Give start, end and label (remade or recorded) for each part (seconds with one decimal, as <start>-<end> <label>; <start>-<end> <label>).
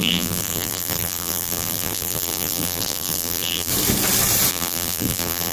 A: 0.0-3.7 remade; 3.7-4.5 recorded; 4.5-5.5 remade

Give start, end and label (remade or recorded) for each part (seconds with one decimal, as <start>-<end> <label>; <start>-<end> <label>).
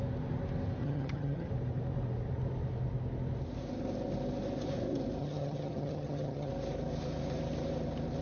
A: 0.0-0.8 recorded; 0.8-1.5 remade; 1.5-5.2 recorded; 5.2-6.5 remade; 6.5-8.2 recorded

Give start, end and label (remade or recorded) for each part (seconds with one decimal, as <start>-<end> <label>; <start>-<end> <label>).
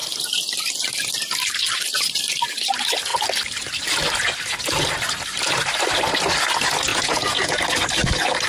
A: 0.0-6.9 recorded; 6.9-7.6 remade; 7.6-8.5 recorded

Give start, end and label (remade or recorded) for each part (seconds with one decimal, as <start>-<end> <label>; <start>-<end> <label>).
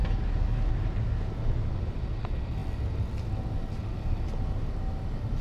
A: 0.0-0.7 remade; 0.7-5.4 recorded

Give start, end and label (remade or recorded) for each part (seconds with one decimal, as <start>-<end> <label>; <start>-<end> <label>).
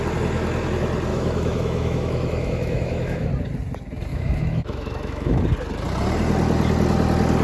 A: 0.0-1.1 recorded; 1.1-3.3 remade; 3.3-4.1 recorded; 4.1-5.4 remade; 5.4-7.4 recorded